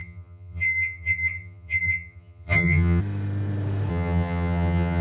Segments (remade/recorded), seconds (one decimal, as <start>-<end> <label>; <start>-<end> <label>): 0.0-3.0 remade; 3.0-3.9 recorded; 3.9-5.0 remade